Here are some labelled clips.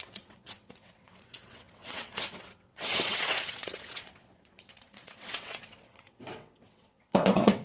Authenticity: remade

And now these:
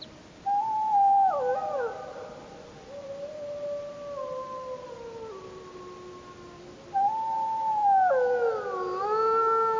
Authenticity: recorded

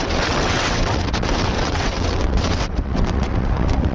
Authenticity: remade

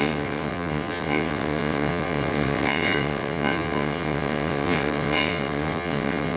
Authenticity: remade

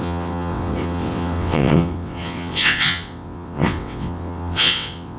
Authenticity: remade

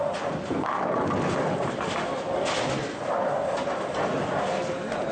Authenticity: recorded